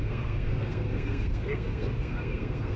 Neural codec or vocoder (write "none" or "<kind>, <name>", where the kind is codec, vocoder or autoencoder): codec, SNAC